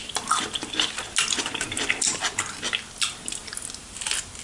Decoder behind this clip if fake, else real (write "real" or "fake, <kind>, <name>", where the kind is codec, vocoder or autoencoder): real